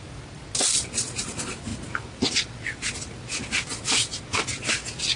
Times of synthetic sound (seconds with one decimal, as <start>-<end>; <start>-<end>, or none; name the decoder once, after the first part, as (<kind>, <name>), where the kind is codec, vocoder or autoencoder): none